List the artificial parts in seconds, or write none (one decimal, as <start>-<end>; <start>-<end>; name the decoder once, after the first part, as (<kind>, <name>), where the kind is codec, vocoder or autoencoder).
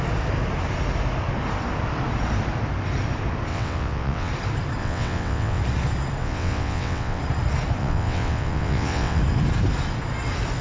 3.5-4.3 (vocoder, WaveNeXt); 4.8-5.6; 6.2-7.2; 7.8-9.2